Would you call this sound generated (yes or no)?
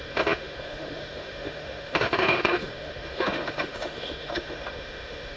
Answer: yes